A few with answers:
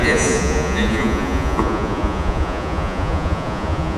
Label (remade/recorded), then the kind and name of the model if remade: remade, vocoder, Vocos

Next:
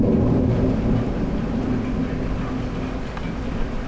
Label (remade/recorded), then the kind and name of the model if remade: recorded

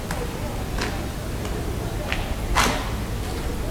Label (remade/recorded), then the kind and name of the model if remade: recorded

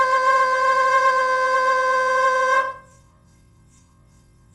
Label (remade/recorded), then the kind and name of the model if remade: remade, vocoder, WaveNeXt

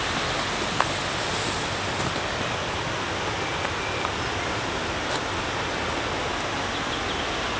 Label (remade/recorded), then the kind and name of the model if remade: recorded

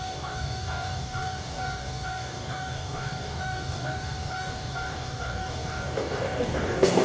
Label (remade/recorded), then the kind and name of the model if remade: remade, codec, DAC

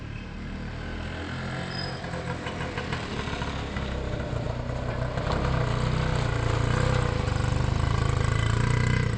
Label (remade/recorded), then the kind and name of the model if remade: recorded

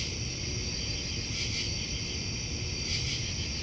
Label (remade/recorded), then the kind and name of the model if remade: recorded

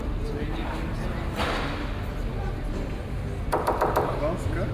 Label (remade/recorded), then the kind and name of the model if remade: recorded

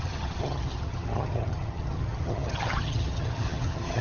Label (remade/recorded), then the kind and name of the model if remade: remade, vocoder, HiFi-GAN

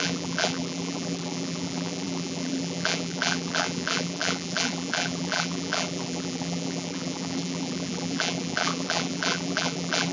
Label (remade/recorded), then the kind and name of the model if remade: remade, vocoder, BigVGAN v2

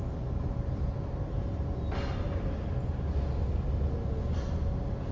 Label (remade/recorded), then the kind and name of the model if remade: recorded